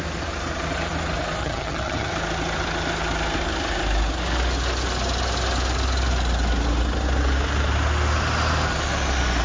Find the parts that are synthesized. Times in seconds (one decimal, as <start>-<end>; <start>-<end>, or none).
1.4-2.1